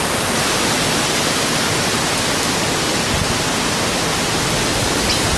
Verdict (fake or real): real